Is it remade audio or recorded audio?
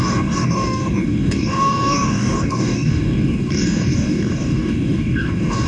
remade